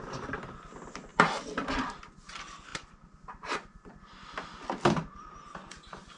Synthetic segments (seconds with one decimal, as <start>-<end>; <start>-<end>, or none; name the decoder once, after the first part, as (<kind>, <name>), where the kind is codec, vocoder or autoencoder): 1.1-2.0 (vocoder, BigVGAN v2); 2.7-4.0